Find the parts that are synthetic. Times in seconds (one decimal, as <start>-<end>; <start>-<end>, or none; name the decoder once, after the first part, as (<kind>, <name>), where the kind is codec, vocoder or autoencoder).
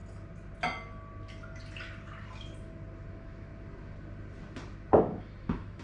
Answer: 3.1-3.5 (autoencoder, DAC-VAE); 5.0-5.8